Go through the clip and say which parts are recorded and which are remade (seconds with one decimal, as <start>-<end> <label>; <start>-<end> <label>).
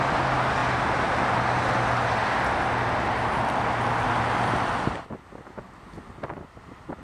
0.0-7.0 recorded